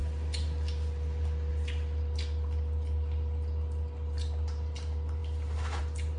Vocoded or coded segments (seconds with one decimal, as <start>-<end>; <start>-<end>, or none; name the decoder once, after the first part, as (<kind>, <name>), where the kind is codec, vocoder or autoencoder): none